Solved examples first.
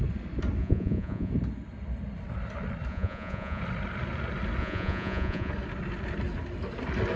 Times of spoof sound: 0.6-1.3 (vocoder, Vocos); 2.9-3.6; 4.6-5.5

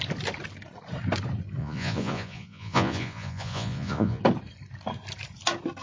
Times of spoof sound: 1.6-4.2 (vocoder, Vocos)